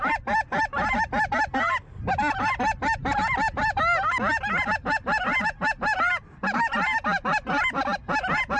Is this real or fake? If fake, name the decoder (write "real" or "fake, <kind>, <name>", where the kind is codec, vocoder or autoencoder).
real